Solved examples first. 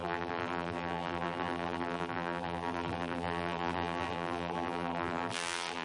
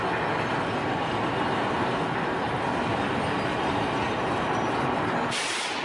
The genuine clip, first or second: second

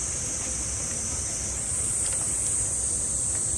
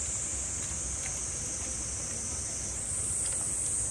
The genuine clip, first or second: second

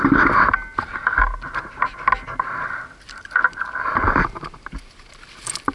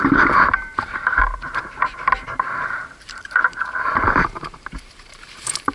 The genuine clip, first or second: first